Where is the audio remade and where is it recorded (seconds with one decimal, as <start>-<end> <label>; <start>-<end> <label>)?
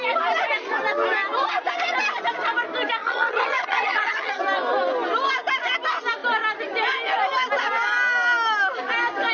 0.0-3.0 recorded; 3.0-4.4 remade; 4.4-9.3 recorded